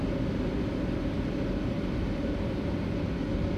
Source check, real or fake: real